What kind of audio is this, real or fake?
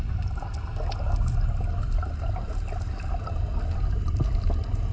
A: real